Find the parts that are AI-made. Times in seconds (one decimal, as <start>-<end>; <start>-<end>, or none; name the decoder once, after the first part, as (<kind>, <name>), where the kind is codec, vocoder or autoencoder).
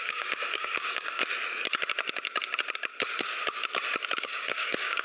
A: 0.0-1.2 (codec, DAC); 4.2-5.0